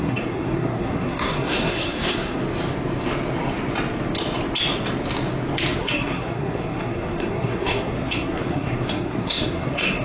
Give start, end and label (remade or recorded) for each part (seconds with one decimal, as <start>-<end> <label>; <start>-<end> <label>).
0.0-2.4 remade; 2.4-5.8 recorded; 5.8-10.0 remade

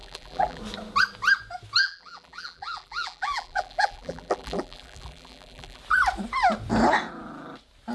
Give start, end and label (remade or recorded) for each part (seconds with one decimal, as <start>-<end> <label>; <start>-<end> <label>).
0.0-0.6 remade; 0.6-1.8 recorded; 1.8-5.8 remade; 5.8-7.9 recorded

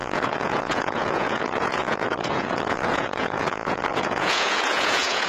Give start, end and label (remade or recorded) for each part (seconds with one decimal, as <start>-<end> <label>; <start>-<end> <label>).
0.0-5.3 remade